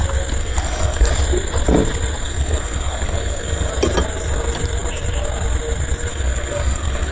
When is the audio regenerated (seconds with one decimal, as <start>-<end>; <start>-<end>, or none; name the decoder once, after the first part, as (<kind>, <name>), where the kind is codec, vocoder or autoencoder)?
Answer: 0.4-1.1 (codec, SNAC); 2.2-3.7; 6.1-7.1